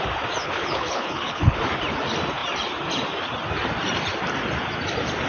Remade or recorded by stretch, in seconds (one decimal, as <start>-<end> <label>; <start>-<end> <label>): 0.0-0.4 recorded; 0.4-1.6 remade; 1.6-5.3 recorded